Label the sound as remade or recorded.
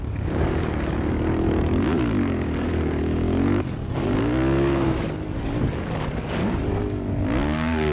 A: remade